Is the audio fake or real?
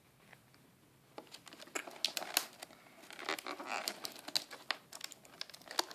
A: real